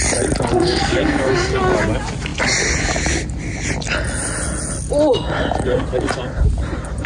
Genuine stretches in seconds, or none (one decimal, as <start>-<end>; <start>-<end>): 0.0-0.5; 1.6-7.1